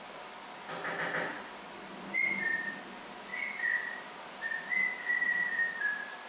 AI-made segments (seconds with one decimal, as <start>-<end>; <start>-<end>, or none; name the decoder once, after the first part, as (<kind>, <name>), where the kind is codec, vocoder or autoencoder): none